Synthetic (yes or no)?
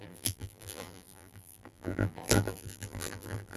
yes